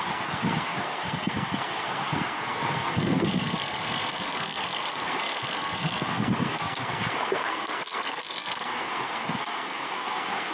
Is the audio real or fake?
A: fake